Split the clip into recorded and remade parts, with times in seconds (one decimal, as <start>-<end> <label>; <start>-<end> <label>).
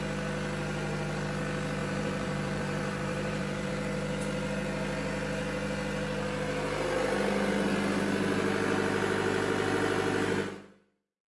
0.0-1.8 recorded; 1.8-3.7 remade; 3.7-11.3 recorded